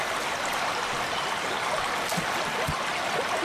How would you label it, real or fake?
real